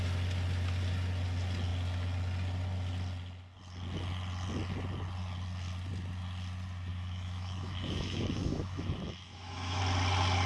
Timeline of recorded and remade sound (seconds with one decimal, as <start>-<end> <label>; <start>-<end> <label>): 0.0-6.9 recorded; 6.9-9.8 remade; 9.8-10.5 recorded